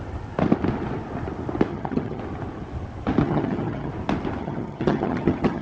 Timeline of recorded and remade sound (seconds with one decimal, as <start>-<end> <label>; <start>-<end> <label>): 0.0-1.7 recorded; 1.7-2.2 remade; 2.2-3.2 recorded; 3.2-3.9 remade; 3.9-4.4 recorded; 4.4-5.6 remade

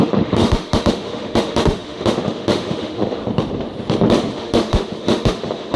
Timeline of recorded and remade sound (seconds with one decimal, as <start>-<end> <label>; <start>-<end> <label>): 0.0-3.2 remade; 3.2-4.3 recorded; 4.3-5.8 remade

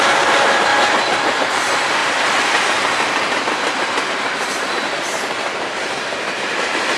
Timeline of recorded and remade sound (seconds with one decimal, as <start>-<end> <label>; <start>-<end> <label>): 0.0-2.0 remade; 2.0-4.1 recorded; 4.1-7.0 remade

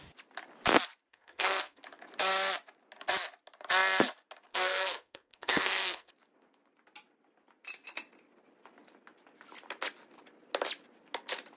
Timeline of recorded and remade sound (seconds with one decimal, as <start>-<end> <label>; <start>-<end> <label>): 0.0-1.1 recorded; 1.1-1.8 remade; 1.8-4.5 recorded; 4.5-6.1 remade; 6.1-11.6 recorded